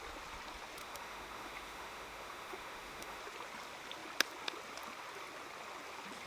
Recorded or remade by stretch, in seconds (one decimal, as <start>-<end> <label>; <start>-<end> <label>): 0.0-0.8 recorded; 0.8-3.2 remade; 3.2-6.3 recorded